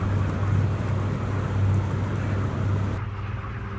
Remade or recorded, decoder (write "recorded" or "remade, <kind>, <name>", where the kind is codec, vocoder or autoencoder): recorded